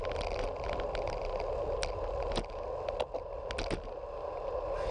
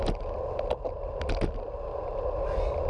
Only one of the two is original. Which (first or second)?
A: first